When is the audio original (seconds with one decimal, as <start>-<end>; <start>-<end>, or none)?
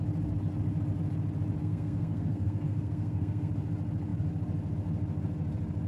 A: 0.0-1.6; 3.5-5.9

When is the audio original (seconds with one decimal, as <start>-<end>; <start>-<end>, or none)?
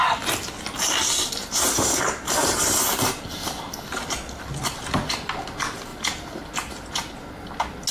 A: 0.0-1.4; 2.4-5.9; 6.9-7.9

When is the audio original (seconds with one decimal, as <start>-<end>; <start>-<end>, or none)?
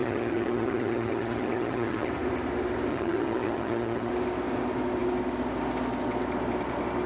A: 2.1-2.9; 4.1-7.1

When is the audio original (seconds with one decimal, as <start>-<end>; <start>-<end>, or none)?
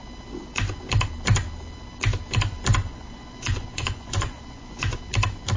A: 0.0-2.9; 5.0-5.6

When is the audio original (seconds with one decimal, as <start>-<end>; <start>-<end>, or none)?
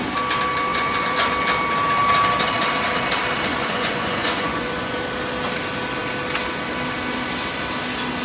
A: 0.0-0.7; 1.3-3.5; 5.0-8.2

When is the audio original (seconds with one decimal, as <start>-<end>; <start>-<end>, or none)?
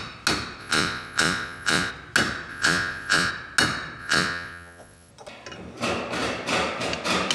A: 0.0-0.6; 1.9-2.5; 3.3-4.0; 5.1-7.3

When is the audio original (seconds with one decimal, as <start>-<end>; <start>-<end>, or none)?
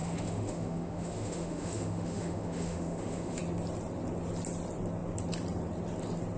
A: 3.4-6.4